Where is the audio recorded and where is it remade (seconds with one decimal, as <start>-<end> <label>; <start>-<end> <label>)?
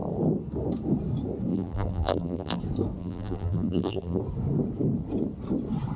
0.0-1.5 recorded; 1.5-2.6 remade; 2.6-3.0 recorded; 3.0-4.2 remade; 4.2-6.0 recorded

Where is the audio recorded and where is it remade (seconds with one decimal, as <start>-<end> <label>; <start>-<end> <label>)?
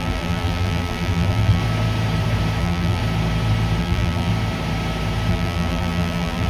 0.0-1.6 remade; 1.6-2.6 recorded; 2.6-3.0 remade; 3.0-3.8 recorded; 3.8-4.3 remade; 4.3-5.3 recorded; 5.3-6.5 remade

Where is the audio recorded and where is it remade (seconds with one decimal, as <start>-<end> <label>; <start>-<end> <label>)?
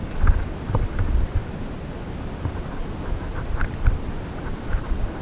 0.0-1.4 recorded; 1.4-2.9 remade; 2.9-3.3 recorded; 3.3-4.1 remade; 4.1-5.2 recorded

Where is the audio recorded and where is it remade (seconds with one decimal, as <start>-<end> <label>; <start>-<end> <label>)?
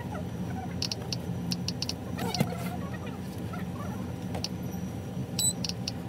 0.0-5.2 recorded; 5.2-6.1 remade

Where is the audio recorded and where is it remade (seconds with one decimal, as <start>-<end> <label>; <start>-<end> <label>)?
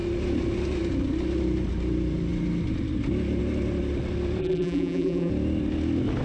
0.0-4.4 recorded; 4.4-5.3 remade; 5.3-6.2 recorded